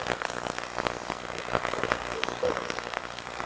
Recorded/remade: remade